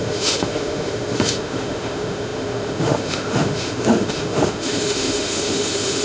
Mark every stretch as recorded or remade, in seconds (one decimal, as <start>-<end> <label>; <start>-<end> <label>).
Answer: 0.0-6.0 remade